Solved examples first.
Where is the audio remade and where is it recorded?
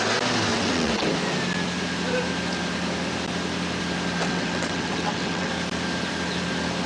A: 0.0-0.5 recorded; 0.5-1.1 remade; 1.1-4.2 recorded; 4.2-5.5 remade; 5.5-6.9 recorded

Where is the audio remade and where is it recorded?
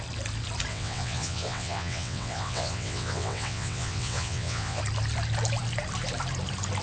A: 0.0-0.7 recorded; 0.7-4.8 remade; 4.8-6.8 recorded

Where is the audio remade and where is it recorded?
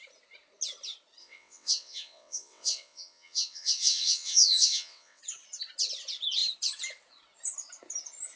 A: 0.0-1.2 recorded; 1.2-5.2 remade; 5.2-8.4 recorded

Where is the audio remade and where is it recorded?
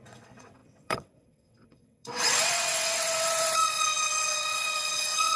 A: 0.0-5.4 remade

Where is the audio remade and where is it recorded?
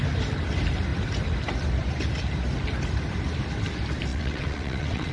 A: 0.0-4.1 recorded; 4.1-5.1 remade